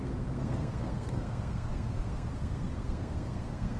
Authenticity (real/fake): fake